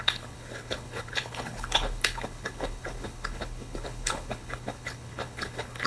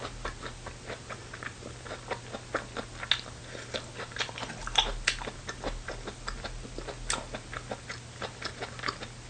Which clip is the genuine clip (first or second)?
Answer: second